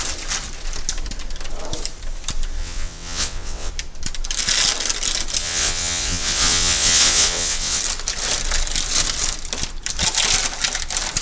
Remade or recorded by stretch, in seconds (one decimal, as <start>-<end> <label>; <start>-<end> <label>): 0.0-2.6 recorded; 2.6-3.7 remade; 3.7-5.4 recorded; 5.4-7.8 remade; 7.8-11.2 recorded